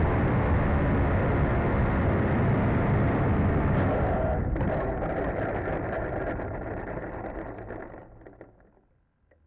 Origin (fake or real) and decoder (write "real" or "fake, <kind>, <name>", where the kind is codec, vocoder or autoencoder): real